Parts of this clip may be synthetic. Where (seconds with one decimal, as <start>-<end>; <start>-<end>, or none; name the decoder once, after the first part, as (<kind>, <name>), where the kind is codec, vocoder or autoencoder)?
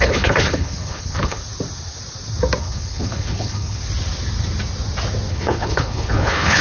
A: 0.0-1.4 (codec, HILCodec); 2.6-3.8; 5.3-6.6